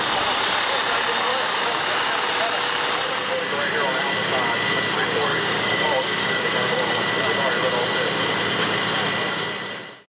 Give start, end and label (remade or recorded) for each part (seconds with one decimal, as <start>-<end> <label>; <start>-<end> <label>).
0.0-1.3 recorded; 1.3-2.1 remade; 2.1-5.3 recorded; 5.3-7.0 remade; 7.0-10.2 recorded